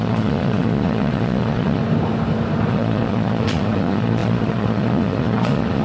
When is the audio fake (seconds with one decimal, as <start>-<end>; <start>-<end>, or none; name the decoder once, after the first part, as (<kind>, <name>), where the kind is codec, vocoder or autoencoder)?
0.0-1.8 (vocoder, Vocos); 2.7-5.8